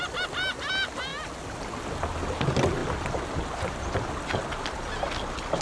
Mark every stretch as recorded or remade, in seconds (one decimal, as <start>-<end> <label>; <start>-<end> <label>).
0.0-5.6 recorded